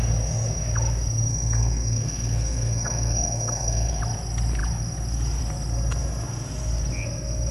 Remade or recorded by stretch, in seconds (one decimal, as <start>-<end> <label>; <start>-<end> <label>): 0.0-1.3 recorded; 1.3-4.0 remade; 4.0-7.5 recorded